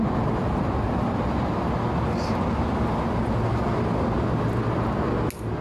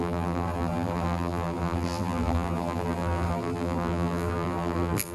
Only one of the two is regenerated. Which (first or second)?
second